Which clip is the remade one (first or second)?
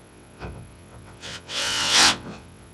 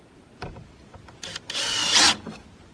first